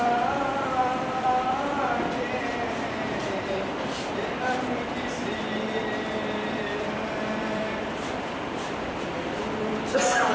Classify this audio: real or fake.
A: fake